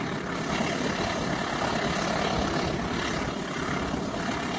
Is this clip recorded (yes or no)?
yes